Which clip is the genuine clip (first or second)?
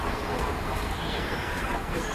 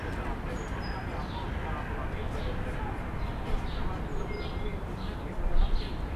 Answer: second